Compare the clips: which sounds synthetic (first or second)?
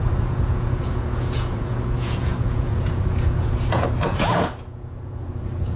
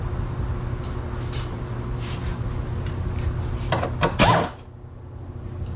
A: first